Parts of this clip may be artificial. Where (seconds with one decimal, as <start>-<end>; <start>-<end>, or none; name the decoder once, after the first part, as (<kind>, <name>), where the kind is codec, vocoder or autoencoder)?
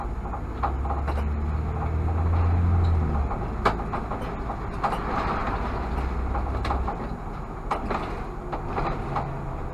none